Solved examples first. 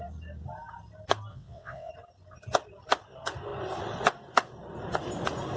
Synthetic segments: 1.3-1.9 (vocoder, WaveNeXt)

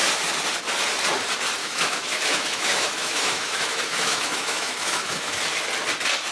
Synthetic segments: 1.6-5.4 (autoencoder, DAC-VAE)